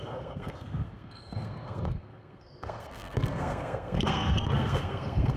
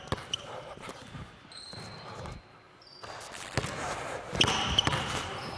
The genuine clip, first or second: second